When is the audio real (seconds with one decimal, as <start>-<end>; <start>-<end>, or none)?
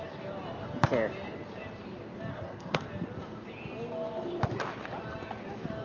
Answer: 0.0-2.3; 2.8-5.8